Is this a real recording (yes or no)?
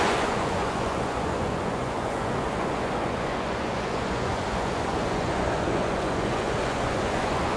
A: no